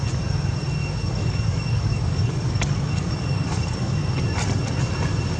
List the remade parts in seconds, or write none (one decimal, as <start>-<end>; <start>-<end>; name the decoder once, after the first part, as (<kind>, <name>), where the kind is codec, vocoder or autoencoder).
0.8-4.0 (codec, DAC)